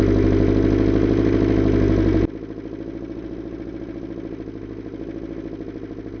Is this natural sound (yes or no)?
yes